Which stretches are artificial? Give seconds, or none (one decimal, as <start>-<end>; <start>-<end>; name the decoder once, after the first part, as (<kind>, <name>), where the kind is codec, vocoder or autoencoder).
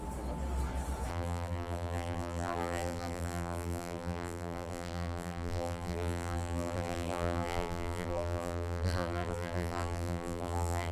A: 1.1-10.9 (vocoder, BigVGAN v2)